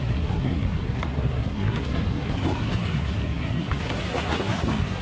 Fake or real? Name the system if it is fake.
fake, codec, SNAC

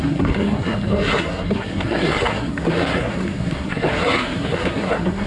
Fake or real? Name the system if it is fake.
fake, codec, SNAC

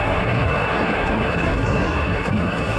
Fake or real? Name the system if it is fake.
fake, codec, SNAC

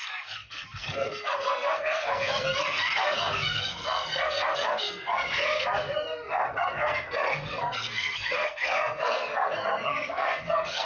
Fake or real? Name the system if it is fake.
fake, codec, SNAC